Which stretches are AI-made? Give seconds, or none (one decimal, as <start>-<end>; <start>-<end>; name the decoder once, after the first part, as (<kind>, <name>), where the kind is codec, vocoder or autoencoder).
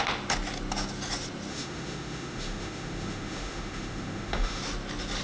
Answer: 1.5-4.6 (autoencoder, DAC-VAE)